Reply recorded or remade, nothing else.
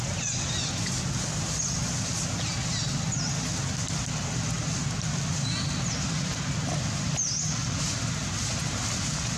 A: recorded